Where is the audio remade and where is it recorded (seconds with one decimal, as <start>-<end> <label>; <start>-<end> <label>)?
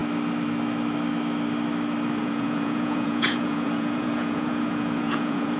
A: 0.0-2.2 recorded; 2.2-5.6 remade